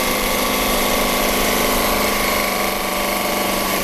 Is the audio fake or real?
fake